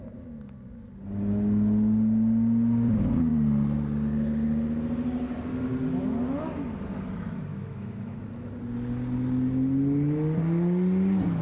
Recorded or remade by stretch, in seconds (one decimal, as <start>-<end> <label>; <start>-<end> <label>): 0.0-7.5 recorded; 7.5-8.2 remade; 8.2-11.4 recorded